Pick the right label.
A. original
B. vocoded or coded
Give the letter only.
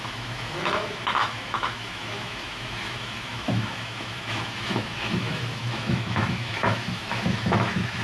B